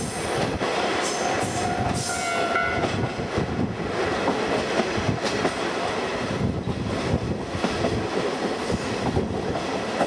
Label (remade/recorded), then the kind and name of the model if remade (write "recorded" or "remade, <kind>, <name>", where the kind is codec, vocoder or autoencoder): recorded